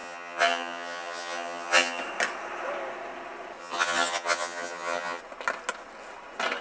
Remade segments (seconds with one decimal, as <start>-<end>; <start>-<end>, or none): 0.0-2.0; 3.6-5.2